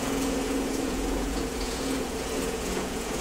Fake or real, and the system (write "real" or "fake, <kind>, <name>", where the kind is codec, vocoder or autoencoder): fake, vocoder, Vocos